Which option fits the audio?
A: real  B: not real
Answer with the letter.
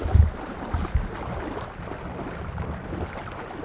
A